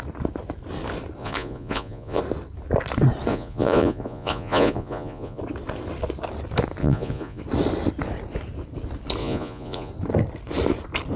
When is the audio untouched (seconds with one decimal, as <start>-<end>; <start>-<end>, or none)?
0.0-1.2; 2.2-3.3; 5.4-6.8; 7.4-9.2; 9.9-11.2